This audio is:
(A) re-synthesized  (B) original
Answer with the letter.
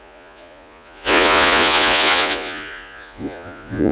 A